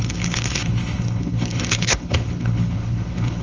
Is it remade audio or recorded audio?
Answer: remade